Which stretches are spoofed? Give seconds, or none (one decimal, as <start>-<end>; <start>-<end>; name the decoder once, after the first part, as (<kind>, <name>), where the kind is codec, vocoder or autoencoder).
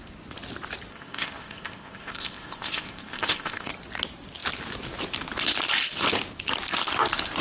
0.9-3.7 (codec, ZipCodec)